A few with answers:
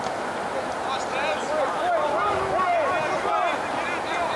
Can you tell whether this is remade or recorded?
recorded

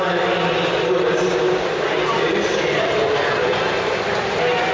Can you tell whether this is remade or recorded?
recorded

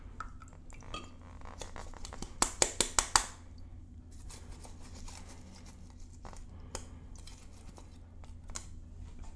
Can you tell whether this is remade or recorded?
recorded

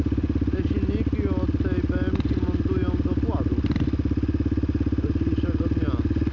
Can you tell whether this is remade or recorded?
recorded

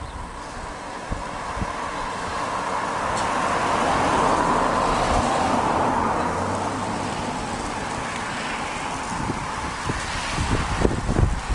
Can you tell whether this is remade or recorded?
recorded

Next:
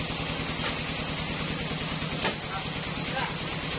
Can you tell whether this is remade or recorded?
recorded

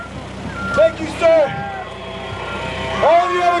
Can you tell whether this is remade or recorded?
recorded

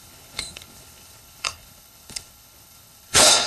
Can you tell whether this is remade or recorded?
remade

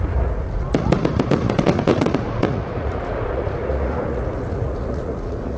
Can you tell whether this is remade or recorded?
remade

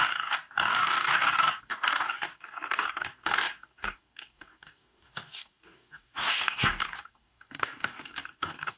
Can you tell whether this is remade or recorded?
remade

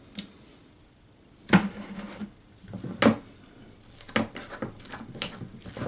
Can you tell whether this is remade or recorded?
recorded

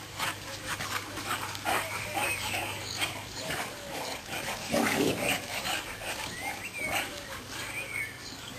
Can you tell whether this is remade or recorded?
remade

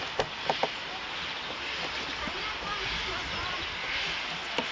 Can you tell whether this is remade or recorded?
recorded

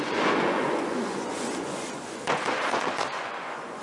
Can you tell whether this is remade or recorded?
remade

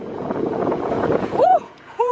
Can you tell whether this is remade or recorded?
remade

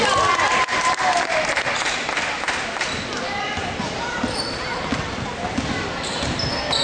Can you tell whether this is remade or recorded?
recorded